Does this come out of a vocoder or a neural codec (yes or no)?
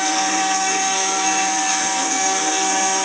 yes